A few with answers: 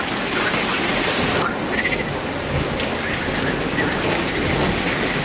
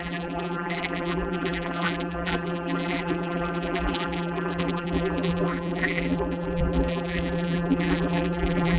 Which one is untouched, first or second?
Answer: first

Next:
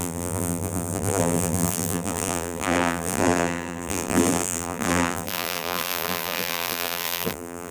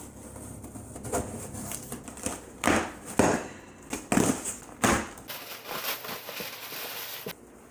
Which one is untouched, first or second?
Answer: second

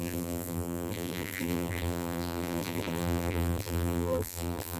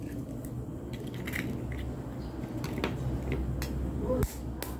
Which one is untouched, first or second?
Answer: second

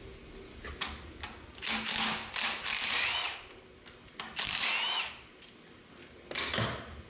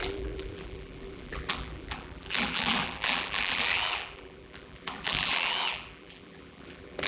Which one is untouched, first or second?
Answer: first